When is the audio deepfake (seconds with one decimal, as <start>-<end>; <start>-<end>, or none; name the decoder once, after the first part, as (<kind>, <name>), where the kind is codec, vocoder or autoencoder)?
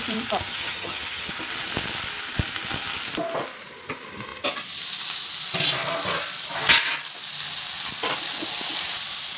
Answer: 0.5-1.3 (vocoder, HiFi-GAN)